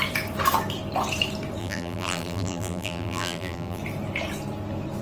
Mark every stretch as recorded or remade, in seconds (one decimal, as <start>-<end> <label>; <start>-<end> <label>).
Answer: 0.0-1.6 recorded; 1.6-3.8 remade; 3.8-5.0 recorded